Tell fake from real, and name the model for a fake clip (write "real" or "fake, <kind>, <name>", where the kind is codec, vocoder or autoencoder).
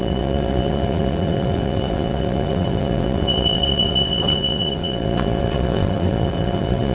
fake, vocoder, WaveNeXt